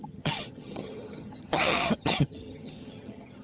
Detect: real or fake fake